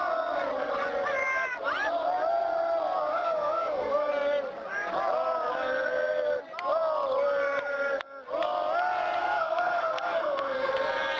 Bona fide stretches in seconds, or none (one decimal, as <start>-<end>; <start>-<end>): 0.0-3.1; 4.1-9.2; 10.7-11.2